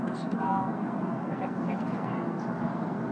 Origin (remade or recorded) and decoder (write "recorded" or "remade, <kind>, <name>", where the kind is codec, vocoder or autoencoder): remade, codec, SNAC